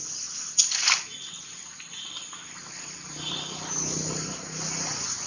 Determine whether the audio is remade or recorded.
recorded